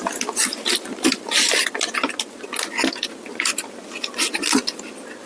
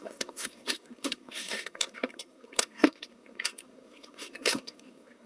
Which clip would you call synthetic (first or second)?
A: second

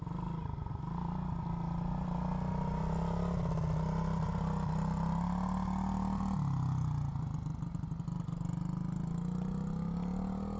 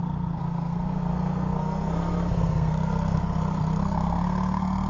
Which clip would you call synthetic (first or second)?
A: second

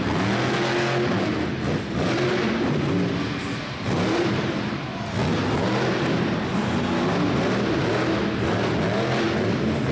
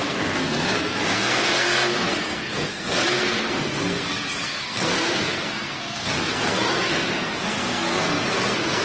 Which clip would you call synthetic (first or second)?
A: second